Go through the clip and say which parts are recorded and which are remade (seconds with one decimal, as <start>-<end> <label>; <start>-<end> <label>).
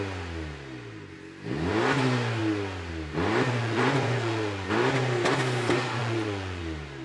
0.0-3.6 recorded; 3.6-4.7 remade; 4.7-6.0 recorded; 6.0-6.6 remade; 6.6-7.0 recorded